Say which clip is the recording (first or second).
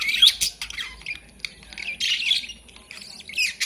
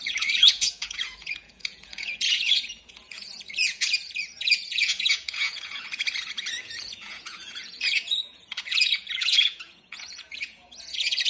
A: first